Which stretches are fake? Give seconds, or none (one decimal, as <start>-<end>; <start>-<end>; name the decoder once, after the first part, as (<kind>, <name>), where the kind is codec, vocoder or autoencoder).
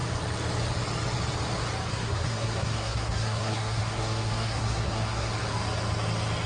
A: 1.9-5.3 (codec, SNAC)